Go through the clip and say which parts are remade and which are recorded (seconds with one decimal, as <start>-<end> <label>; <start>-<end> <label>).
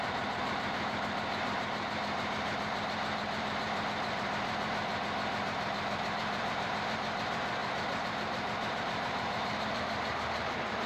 0.0-4.9 remade; 4.9-5.4 recorded; 5.4-10.9 remade